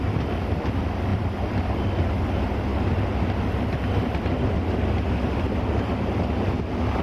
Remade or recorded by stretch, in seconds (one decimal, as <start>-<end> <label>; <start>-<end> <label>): 0.0-7.0 recorded